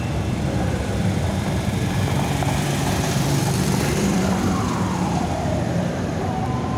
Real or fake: fake